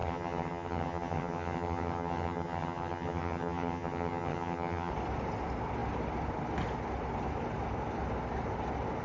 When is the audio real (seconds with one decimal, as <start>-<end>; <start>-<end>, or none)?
4.9-9.0